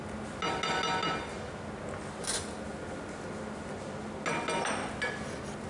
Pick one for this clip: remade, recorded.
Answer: recorded